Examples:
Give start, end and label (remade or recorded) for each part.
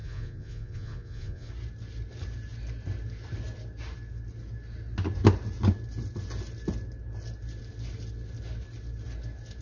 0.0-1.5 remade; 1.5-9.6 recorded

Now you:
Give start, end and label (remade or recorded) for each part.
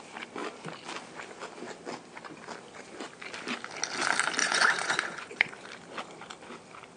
0.0-4.4 recorded; 4.4-5.5 remade; 5.5-7.0 recorded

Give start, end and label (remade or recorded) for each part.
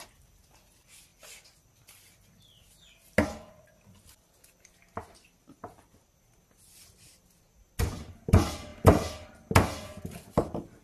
0.0-10.8 recorded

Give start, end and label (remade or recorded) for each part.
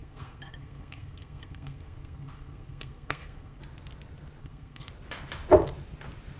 0.0-3.6 remade; 3.6-4.4 recorded; 4.4-4.9 remade; 4.9-6.4 recorded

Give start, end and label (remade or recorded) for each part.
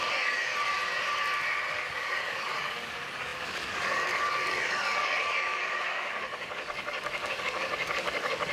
0.0-0.5 remade; 0.5-1.7 recorded; 1.7-8.5 remade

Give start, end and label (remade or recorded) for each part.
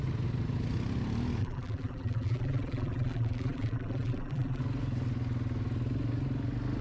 0.0-1.4 recorded; 1.4-4.6 remade; 4.6-6.8 recorded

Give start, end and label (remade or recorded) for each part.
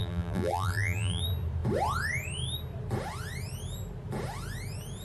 0.0-1.2 remade; 1.2-5.0 recorded